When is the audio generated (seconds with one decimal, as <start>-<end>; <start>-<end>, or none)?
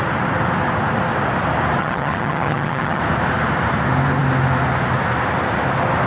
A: 1.8-3.0